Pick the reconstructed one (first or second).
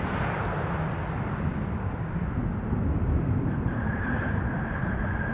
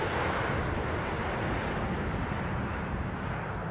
first